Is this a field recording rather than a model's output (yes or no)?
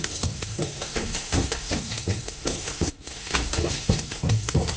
no